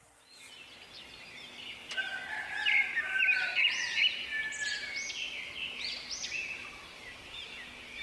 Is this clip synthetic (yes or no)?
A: no